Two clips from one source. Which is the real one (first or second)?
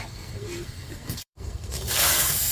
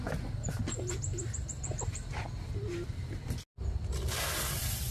second